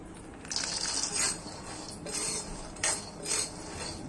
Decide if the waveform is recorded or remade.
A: recorded